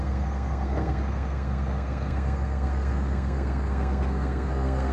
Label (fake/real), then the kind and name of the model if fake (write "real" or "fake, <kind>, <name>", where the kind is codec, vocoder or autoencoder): fake, codec, SNAC